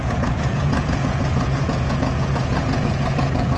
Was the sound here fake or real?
fake